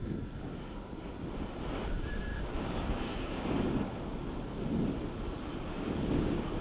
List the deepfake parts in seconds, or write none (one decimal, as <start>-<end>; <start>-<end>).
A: 2.3-3.7